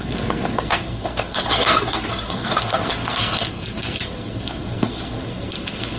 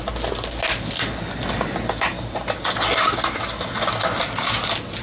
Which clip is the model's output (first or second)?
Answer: first